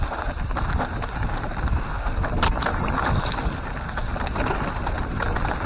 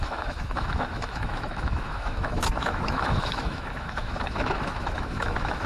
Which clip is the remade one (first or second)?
second